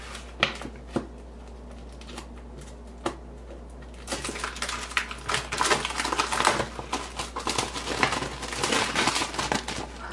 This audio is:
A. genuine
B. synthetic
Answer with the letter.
A